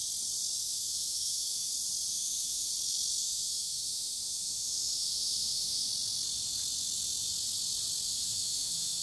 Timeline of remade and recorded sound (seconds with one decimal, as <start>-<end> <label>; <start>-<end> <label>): 0.0-0.6 recorded; 0.6-1.7 remade; 1.7-2.1 recorded; 2.1-2.7 remade; 2.7-3.2 recorded; 3.2-5.9 remade; 5.9-8.1 recorded; 8.1-9.0 remade